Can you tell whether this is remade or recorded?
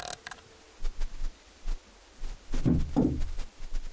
recorded